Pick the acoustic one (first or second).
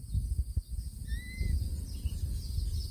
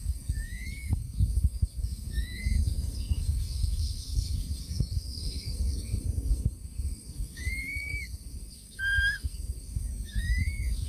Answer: first